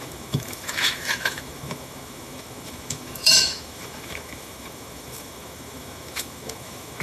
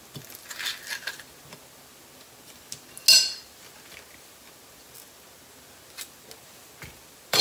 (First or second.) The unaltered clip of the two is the second